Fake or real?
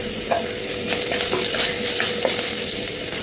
real